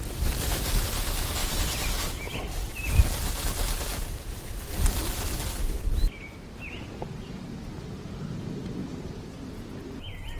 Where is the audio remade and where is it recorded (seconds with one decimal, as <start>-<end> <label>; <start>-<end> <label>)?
0.0-8.8 recorded; 8.8-9.6 remade; 9.6-10.4 recorded